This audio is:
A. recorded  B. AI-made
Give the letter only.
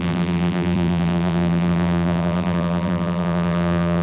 B